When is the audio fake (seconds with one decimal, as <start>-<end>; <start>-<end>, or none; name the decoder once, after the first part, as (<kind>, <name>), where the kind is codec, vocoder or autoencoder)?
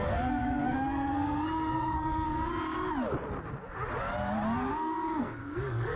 0.0-2.5 (codec, SNAC); 4.7-6.0